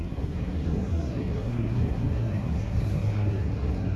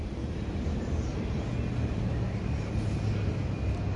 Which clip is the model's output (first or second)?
first